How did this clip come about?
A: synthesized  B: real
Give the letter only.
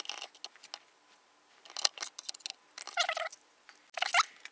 B